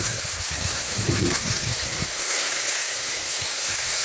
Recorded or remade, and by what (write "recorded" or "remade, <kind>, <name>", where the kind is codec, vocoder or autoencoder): remade, codec, SNAC